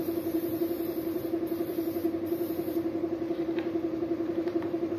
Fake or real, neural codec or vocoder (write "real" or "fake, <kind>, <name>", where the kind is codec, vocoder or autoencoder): fake, vocoder, BigVGAN v2